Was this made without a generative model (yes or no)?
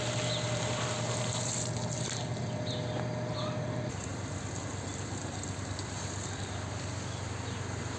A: no